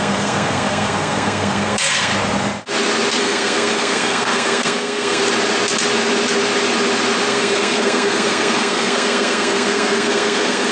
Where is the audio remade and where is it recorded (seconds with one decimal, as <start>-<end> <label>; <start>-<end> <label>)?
0.0-2.1 remade; 2.1-3.2 recorded; 3.2-5.2 remade; 5.2-7.3 recorded; 7.3-10.7 remade